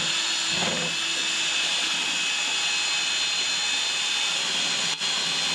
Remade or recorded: recorded